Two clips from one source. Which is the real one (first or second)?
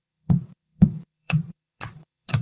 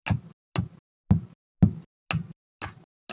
second